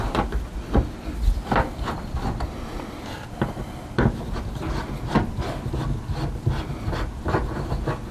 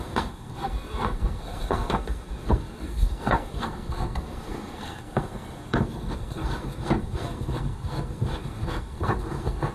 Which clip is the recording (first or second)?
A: first